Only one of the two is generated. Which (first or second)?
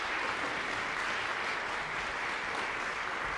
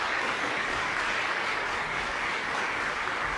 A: second